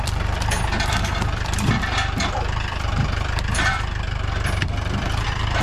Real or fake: fake